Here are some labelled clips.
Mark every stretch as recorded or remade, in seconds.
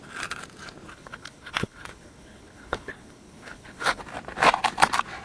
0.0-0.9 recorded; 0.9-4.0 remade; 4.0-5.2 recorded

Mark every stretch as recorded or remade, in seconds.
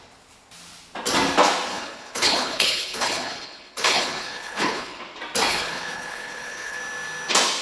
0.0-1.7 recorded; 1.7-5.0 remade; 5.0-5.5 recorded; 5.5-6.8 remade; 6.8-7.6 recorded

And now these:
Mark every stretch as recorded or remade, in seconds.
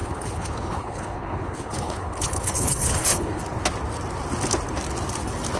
0.0-3.4 remade; 3.4-5.6 recorded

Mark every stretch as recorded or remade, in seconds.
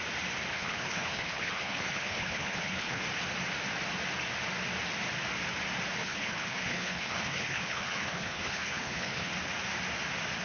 0.0-0.5 recorded; 0.5-3.0 remade; 3.0-6.0 recorded; 6.0-9.3 remade; 9.3-10.4 recorded